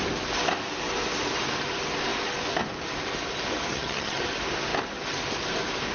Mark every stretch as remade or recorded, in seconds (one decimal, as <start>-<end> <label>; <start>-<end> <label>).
0.0-3.7 recorded; 3.7-4.2 remade; 4.2-5.9 recorded